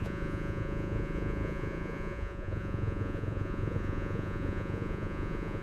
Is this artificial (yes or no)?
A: yes